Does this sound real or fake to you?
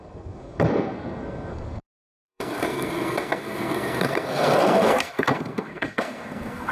fake